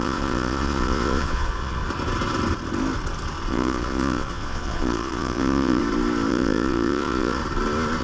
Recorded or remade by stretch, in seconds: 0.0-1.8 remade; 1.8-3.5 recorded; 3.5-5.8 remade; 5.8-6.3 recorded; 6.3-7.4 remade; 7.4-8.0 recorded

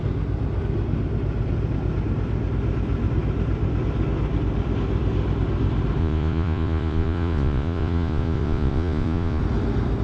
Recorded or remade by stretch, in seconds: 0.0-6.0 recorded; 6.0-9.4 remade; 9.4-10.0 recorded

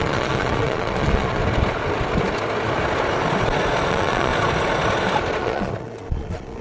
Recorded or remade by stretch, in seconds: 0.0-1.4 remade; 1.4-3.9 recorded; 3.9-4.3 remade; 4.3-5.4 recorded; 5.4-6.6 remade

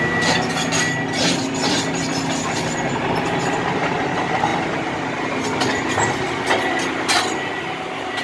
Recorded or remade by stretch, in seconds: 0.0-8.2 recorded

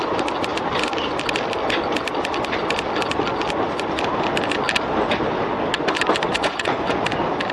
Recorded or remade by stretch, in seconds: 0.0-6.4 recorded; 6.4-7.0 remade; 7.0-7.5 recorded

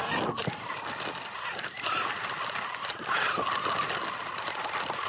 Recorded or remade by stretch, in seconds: 0.0-5.1 recorded

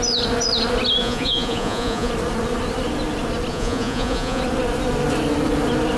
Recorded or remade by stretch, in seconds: 0.0-1.0 recorded; 1.0-2.1 remade; 2.1-3.5 recorded; 3.5-4.4 remade; 4.4-6.0 recorded

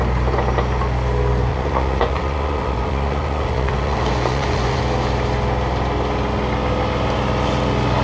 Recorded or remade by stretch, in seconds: 0.0-1.5 recorded; 1.5-4.8 remade; 4.8-8.0 recorded